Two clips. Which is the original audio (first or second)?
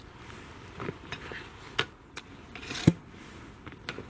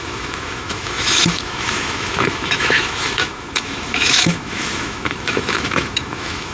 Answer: first